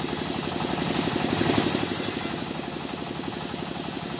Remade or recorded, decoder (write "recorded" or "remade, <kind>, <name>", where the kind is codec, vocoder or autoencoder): recorded